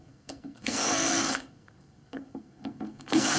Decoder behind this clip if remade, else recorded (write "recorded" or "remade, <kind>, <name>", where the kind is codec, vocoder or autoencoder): remade, codec, SNAC